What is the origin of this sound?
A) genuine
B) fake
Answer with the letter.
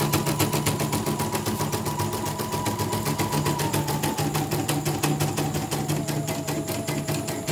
A